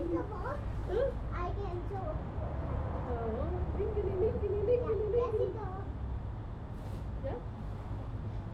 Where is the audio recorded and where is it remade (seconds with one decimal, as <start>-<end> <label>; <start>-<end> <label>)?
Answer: 0.0-8.5 recorded